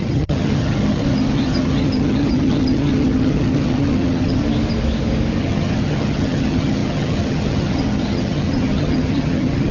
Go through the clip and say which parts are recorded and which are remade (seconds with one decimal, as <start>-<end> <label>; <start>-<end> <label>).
0.0-4.4 remade; 4.4-5.4 recorded; 5.4-9.7 remade